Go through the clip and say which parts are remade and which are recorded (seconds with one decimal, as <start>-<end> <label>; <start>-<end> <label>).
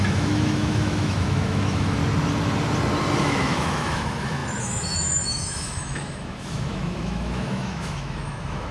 0.0-2.0 remade; 2.0-3.2 recorded; 3.2-8.7 remade